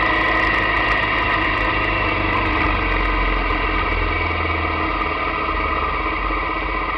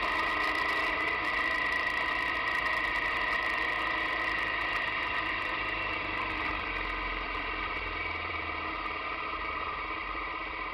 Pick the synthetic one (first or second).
second